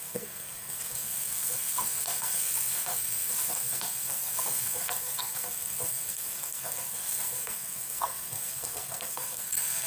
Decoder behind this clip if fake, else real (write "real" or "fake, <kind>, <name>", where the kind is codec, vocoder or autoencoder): fake, codec, SNAC